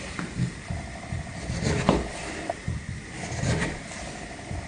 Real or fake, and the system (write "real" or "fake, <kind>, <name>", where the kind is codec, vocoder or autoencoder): real